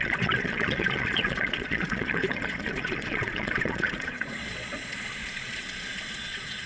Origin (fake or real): fake